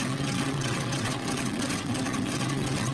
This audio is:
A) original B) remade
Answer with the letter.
B